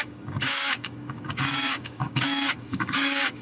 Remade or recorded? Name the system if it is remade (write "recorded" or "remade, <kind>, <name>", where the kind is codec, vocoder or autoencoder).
remade, codec, DAC